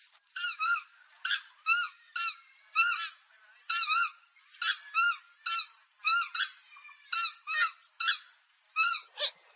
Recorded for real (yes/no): yes